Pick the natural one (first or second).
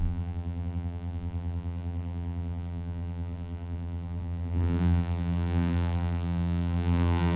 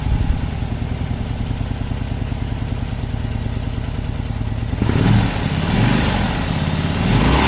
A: second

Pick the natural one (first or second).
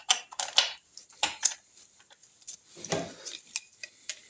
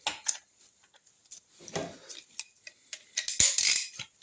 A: second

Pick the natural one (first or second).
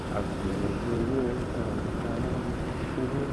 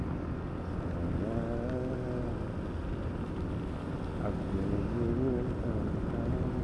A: second